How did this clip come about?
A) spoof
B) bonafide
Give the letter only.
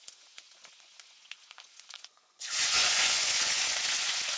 A